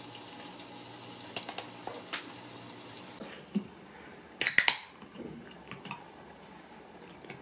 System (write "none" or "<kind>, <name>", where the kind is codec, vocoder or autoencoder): none